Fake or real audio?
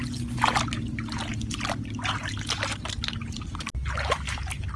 real